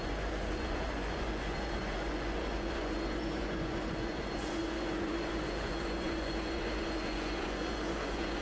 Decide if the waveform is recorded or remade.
remade